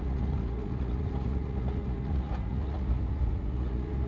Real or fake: fake